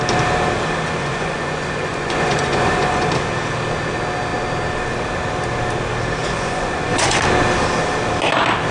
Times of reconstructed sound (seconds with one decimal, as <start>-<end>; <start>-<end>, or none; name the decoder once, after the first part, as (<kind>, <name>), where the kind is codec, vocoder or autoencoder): 1.0-3.1 (vocoder, Vocos); 6.2-7.2